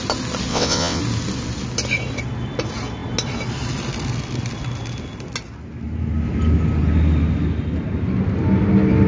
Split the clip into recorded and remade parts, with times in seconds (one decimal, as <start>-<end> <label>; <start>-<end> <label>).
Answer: 0.0-0.5 recorded; 0.5-1.0 remade; 1.0-9.1 recorded